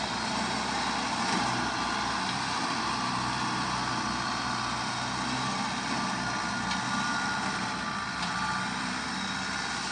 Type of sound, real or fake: fake